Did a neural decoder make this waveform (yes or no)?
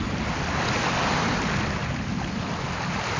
no